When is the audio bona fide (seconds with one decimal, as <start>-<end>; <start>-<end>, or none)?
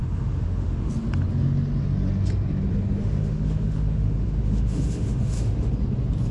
0.9-3.0; 5.7-6.3